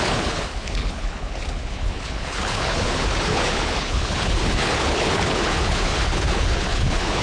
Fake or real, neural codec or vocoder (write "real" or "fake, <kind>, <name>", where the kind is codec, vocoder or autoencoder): fake, codec, HILCodec